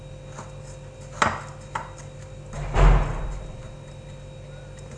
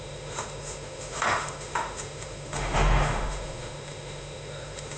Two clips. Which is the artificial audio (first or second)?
second